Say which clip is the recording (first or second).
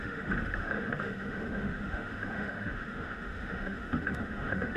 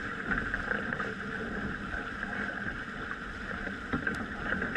second